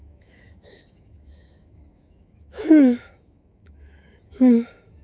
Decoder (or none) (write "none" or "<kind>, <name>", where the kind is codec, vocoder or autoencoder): autoencoder, DAC-VAE